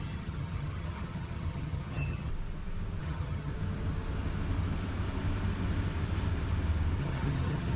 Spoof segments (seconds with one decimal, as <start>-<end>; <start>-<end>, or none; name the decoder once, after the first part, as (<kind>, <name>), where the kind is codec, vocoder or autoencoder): 0.0-2.3 (vocoder, HiFi-GAN); 3.0-3.5; 7.0-7.8